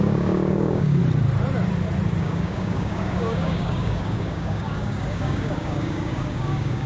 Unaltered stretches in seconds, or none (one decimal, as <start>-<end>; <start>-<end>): 1.0-2.2